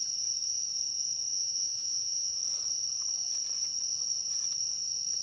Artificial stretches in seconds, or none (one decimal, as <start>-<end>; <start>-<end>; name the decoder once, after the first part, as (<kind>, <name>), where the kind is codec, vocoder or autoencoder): 1.3-2.4 (vocoder, Vocos)